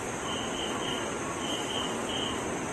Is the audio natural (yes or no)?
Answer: no